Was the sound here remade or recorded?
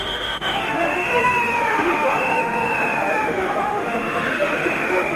remade